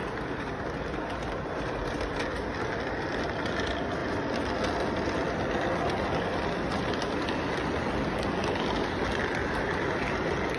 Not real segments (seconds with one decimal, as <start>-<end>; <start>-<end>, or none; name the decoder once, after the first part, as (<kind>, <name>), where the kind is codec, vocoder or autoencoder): none